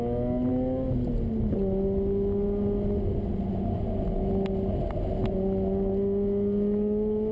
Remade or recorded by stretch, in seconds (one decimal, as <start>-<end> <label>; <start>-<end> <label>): 0.0-7.3 recorded